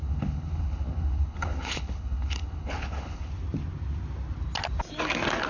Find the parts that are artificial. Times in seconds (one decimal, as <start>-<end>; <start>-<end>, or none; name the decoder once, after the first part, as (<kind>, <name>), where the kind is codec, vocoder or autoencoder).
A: 0.0-3.3 (codec, HILCodec)